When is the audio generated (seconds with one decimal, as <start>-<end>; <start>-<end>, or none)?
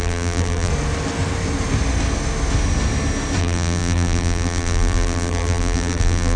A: 0.0-0.7; 3.4-6.4